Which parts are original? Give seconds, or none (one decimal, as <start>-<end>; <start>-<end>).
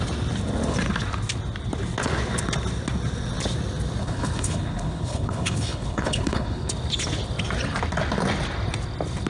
0.0-4.0; 6.7-9.3